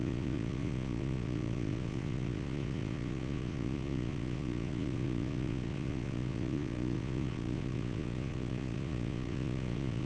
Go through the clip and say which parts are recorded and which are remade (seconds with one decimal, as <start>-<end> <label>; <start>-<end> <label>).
0.0-10.1 remade